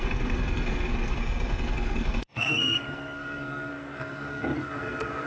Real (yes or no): no